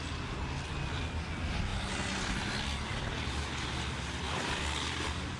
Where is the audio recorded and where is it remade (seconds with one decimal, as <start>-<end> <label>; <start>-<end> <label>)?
0.0-5.4 recorded

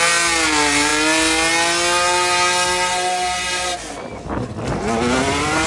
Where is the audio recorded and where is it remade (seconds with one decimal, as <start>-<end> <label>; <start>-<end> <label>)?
0.0-5.7 recorded

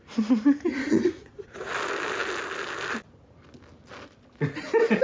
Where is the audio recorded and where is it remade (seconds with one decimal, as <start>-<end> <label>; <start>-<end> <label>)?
0.0-0.7 recorded; 0.7-1.7 remade; 1.7-5.0 recorded

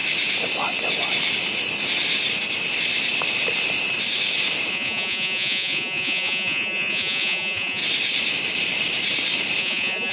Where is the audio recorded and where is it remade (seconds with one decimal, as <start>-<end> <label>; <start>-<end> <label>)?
0.0-4.7 recorded; 4.7-7.8 remade; 7.8-9.6 recorded; 9.6-10.1 remade

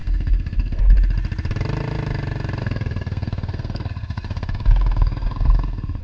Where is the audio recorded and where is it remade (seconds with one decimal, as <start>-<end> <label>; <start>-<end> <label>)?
0.0-0.8 remade; 0.8-2.6 recorded; 2.6-6.0 remade

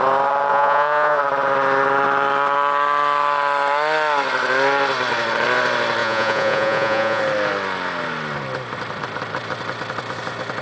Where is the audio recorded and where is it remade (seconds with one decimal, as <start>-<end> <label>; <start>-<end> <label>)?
0.0-0.5 recorded; 0.5-1.2 remade; 1.2-6.0 recorded; 6.0-7.2 remade; 7.2-10.6 recorded

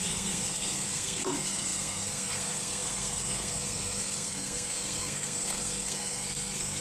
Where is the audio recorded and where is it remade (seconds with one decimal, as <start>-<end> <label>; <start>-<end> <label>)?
0.0-6.8 remade